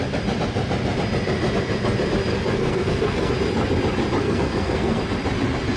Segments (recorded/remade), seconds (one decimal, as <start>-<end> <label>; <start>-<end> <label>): 0.0-2.3 recorded; 2.3-3.3 remade; 3.3-4.2 recorded; 4.2-5.0 remade; 5.0-5.8 recorded